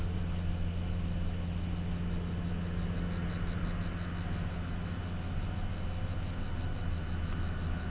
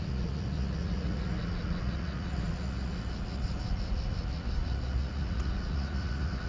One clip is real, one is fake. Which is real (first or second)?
first